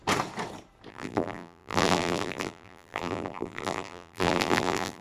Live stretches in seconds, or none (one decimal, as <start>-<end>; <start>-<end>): 0.0-0.9

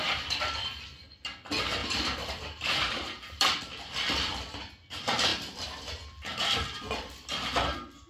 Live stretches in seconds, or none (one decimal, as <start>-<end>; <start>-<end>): 0.0-1.8; 3.4-8.1